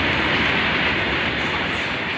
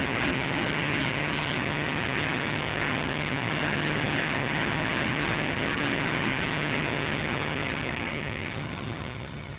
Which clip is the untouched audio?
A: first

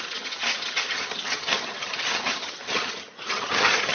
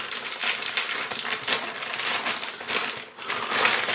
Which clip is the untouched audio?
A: second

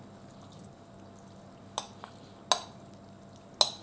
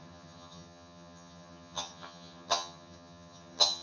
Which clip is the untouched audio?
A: first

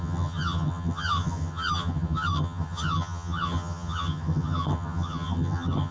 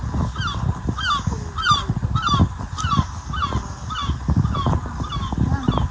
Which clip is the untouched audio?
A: second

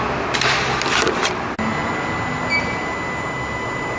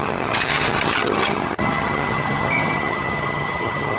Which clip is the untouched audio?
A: first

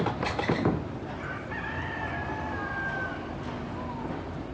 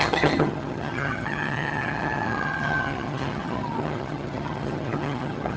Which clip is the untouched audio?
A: first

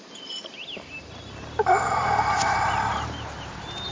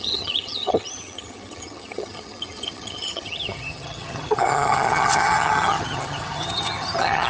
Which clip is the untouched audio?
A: first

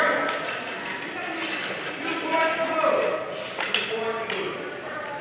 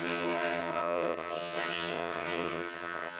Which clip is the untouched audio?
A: first